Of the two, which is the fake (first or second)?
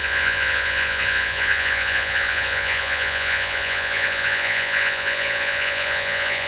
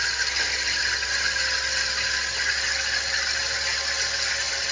first